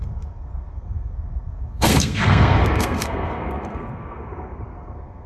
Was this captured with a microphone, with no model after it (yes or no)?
no